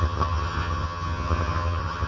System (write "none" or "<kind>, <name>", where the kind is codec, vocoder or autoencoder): vocoder, HiFi-GAN